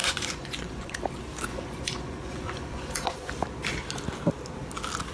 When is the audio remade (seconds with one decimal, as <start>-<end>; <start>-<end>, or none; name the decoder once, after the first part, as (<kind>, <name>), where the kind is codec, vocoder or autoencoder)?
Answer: 0.0-1.0 (vocoder, Vocos); 1.5-3.3